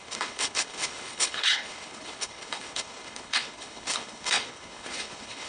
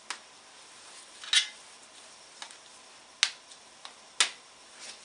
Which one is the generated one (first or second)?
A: first